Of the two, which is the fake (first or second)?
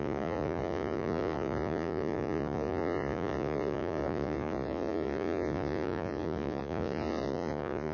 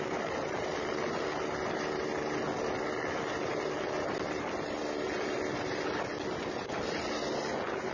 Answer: first